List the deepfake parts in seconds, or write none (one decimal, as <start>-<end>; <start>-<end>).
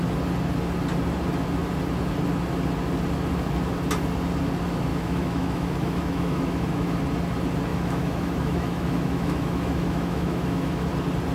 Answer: 4.9-7.0; 7.7-10.9